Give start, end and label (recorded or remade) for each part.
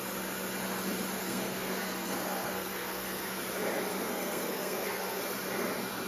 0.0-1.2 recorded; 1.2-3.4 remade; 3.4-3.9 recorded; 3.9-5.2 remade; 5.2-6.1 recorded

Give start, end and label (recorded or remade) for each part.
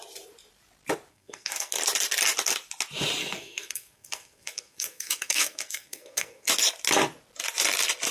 0.0-1.1 recorded; 1.1-1.7 remade; 1.7-3.2 recorded; 3.2-6.5 remade; 6.5-8.1 recorded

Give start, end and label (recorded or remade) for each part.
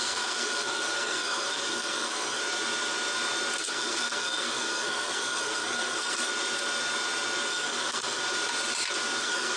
0.0-2.4 remade; 2.4-3.6 recorded; 3.6-6.3 remade; 6.3-7.5 recorded; 7.5-8.2 remade; 8.2-9.2 recorded; 9.2-9.6 remade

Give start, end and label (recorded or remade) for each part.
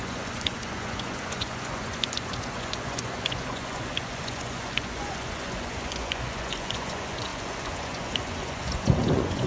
0.0-9.5 remade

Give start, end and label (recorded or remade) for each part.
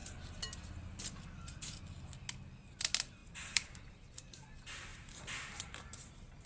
0.0-3.2 recorded; 3.2-4.4 remade; 4.4-4.9 recorded; 4.9-6.5 remade